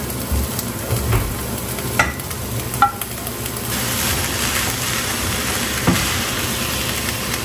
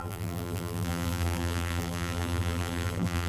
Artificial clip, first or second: second